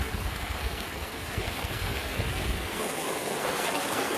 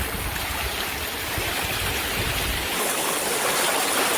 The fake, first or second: first